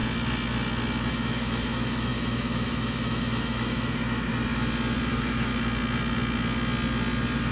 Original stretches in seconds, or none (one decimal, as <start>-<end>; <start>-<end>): 0.0-1.1; 4.3-5.1; 5.5-7.5

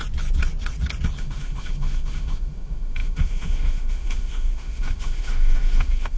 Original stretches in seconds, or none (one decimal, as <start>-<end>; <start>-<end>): 0.0-1.2